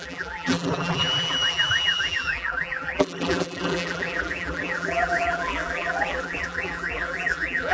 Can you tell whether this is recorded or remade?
remade